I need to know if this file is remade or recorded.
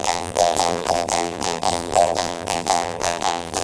remade